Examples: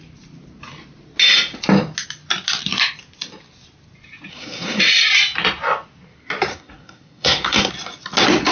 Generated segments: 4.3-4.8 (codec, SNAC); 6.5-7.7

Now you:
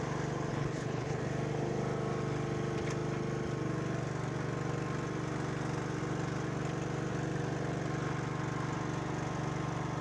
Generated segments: 0.5-1.2 (codec, HILCodec)

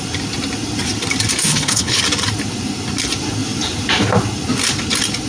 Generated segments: 1.4-2.0 (codec, HILCodec)

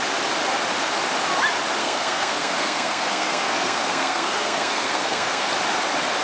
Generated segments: 1.8-5.5 (codec, SNAC)